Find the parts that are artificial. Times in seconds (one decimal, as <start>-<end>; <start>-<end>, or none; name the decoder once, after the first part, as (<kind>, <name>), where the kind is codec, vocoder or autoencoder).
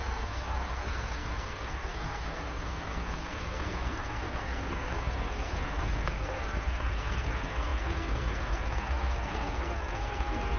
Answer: 0.0-10.6 (codec, SNAC)